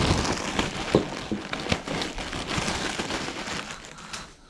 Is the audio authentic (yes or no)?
yes